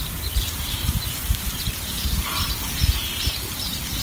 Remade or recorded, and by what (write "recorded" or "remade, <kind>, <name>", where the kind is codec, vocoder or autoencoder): remade, vocoder, BigVGAN v2